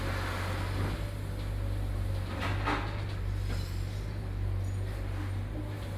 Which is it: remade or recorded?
recorded